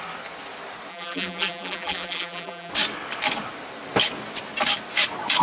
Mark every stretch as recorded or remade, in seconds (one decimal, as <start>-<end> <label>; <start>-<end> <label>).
0.0-0.9 recorded; 0.9-2.7 remade; 2.7-5.4 recorded